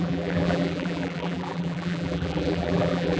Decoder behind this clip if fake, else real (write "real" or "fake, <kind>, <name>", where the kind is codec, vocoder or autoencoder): fake, vocoder, BigVGAN v2